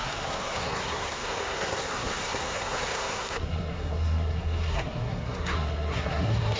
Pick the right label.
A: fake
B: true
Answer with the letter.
A